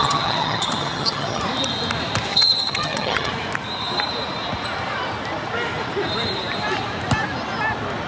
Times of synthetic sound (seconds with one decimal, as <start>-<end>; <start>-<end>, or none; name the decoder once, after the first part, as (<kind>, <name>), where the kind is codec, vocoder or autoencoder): 0.0-1.4 (vocoder, HiFi-GAN); 2.3-3.3